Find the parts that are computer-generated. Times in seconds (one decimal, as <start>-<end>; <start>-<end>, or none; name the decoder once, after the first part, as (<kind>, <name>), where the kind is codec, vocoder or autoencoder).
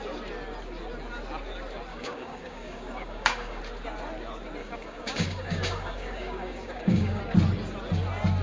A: 1.9-3.6 (codec, DAC); 4.6-7.2